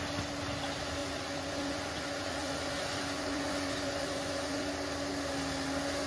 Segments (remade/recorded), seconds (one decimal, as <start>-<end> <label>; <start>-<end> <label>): 0.0-1.0 recorded; 1.0-4.7 remade; 4.7-6.1 recorded